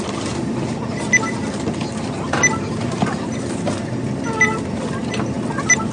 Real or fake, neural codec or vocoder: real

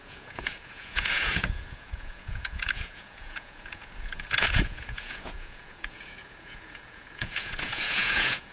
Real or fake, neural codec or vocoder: fake, vocoder, Vocos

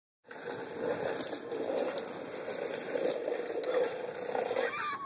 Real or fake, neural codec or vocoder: real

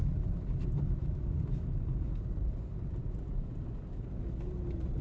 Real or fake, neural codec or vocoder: real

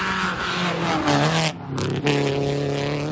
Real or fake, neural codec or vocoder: real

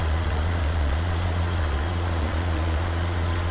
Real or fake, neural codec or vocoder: fake, vocoder, Vocos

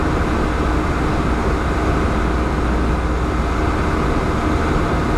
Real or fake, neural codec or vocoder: real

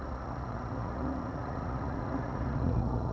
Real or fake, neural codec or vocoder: fake, vocoder, Vocos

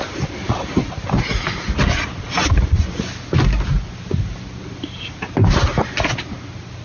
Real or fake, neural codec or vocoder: real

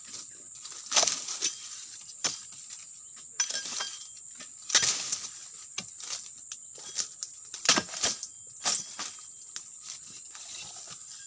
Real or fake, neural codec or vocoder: real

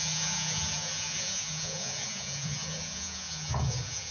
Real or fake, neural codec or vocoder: fake, vocoder, Vocos